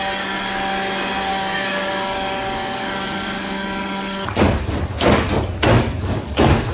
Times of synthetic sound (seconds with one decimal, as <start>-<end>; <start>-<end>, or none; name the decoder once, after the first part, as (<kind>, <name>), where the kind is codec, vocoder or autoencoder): 1.3-5.3 (codec, DAC); 5.7-6.7